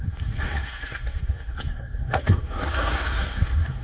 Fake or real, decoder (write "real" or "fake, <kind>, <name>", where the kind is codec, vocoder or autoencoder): fake, codec, SNAC